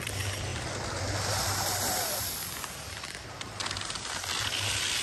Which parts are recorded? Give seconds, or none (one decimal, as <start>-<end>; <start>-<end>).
0.0-5.0